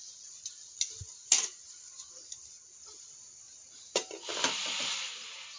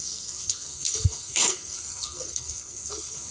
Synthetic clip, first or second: second